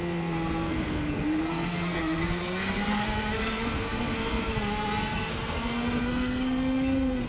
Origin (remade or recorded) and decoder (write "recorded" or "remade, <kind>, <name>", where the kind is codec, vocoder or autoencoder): remade, codec, SNAC